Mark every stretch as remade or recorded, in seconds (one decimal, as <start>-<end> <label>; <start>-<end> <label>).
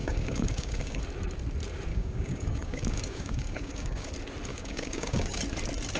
0.0-1.0 remade; 1.0-1.9 recorded; 1.9-4.1 remade; 4.1-4.5 recorded; 4.5-5.4 remade; 5.4-6.0 recorded